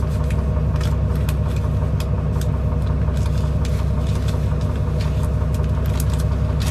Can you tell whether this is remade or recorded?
recorded